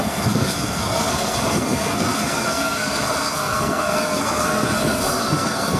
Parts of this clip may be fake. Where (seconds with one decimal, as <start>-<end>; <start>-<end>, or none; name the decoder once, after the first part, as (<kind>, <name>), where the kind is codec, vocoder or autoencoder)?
0.0-5.8 (codec, SNAC)